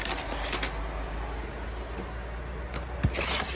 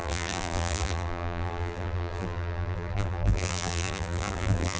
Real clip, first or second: first